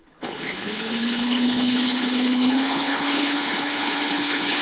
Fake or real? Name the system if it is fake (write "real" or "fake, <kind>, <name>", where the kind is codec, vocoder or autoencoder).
fake, codec, HILCodec